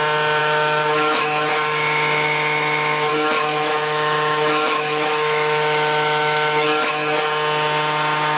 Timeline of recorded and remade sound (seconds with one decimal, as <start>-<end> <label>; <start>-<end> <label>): 0.0-0.4 recorded; 0.4-1.2 remade; 1.2-3.1 recorded; 3.1-6.9 remade; 6.9-8.4 recorded